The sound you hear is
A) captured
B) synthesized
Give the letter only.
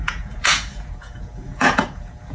B